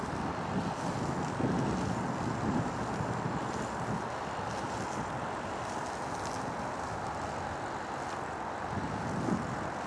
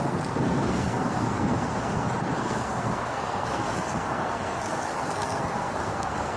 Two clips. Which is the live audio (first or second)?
first